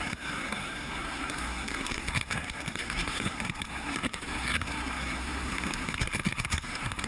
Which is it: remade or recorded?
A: remade